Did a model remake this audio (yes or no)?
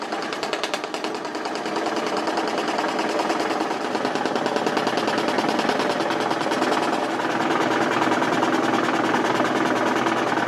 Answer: no